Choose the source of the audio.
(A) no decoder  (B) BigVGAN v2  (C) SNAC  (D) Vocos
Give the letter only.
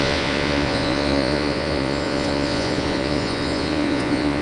D